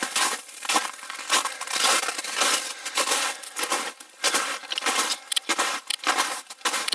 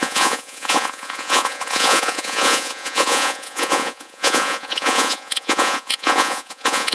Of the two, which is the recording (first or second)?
first